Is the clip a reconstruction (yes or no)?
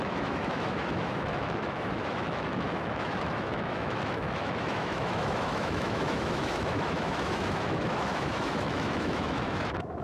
yes